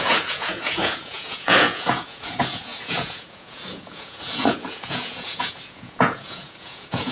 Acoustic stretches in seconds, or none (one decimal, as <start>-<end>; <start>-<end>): none